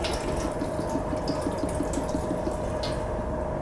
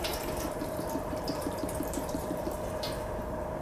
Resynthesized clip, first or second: second